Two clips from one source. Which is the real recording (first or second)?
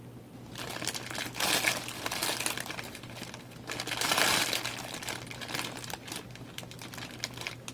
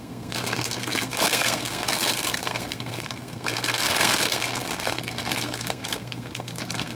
first